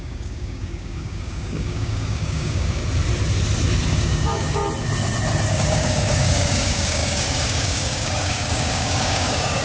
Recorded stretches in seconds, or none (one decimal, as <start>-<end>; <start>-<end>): 2.8-3.9; 4.6-5.5